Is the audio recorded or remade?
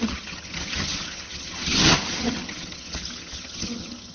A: remade